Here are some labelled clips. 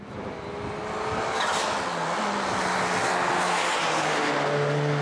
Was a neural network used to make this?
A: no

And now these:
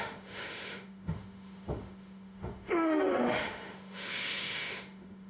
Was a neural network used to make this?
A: yes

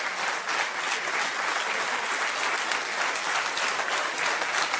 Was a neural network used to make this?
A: no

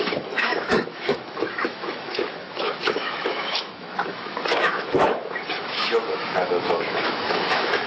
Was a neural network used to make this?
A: yes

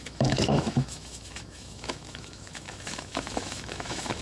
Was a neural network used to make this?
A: yes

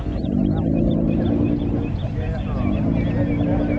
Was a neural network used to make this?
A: no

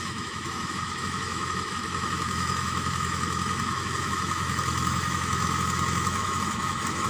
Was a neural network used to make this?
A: yes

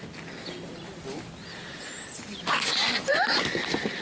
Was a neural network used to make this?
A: no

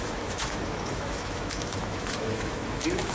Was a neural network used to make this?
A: yes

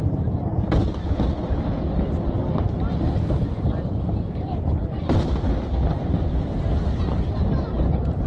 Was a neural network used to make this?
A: no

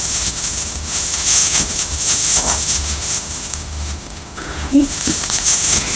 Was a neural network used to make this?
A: yes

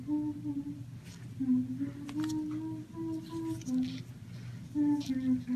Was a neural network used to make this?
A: no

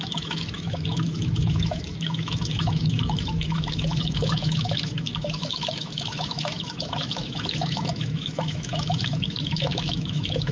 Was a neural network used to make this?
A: yes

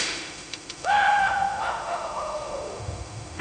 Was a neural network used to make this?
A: yes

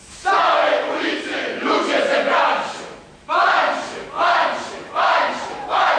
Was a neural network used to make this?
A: yes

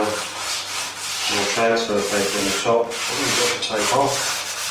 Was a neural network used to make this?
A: no